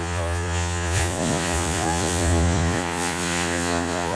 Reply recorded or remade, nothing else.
remade